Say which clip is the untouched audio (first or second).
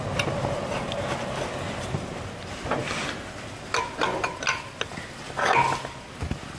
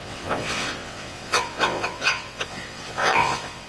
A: first